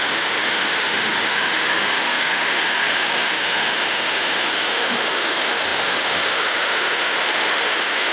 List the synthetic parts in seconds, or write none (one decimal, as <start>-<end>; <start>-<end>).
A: 0.0-8.1